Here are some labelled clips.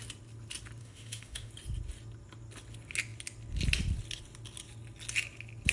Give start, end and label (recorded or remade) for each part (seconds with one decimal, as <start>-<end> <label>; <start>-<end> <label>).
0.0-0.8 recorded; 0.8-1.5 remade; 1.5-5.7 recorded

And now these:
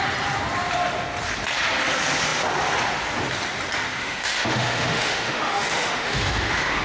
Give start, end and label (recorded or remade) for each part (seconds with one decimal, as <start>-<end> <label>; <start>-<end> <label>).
0.0-4.0 recorded; 4.0-6.8 remade

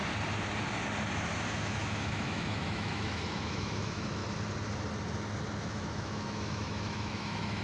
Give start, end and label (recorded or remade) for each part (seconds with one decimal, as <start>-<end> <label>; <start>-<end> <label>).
0.0-1.5 recorded; 1.5-4.2 remade; 4.2-5.6 recorded; 5.6-7.6 remade

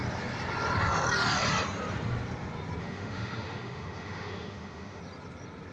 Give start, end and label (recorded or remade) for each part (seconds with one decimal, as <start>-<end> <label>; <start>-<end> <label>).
0.0-2.8 recorded; 2.8-5.0 remade; 5.0-5.7 recorded

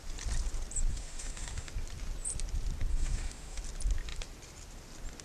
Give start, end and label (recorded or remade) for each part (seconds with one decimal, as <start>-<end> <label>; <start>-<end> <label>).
0.0-0.9 recorded; 0.9-1.7 remade; 1.7-2.9 recorded; 2.9-3.6 remade; 3.6-5.2 recorded

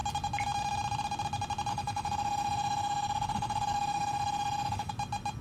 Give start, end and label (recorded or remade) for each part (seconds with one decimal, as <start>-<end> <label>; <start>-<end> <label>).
0.0-1.7 recorded; 1.7-4.9 remade; 4.9-5.4 recorded

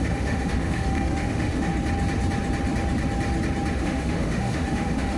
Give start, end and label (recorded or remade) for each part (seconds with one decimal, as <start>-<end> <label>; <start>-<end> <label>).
0.0-1.7 remade; 1.7-3.8 recorded; 3.8-5.2 remade

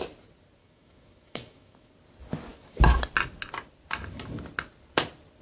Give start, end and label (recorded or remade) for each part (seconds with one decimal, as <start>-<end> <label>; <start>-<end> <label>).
0.0-0.6 recorded; 0.6-1.9 remade; 1.9-2.5 recorded; 2.5-3.0 remade; 3.0-5.4 recorded